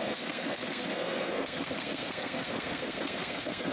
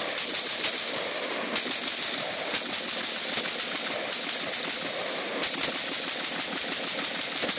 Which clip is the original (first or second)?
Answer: second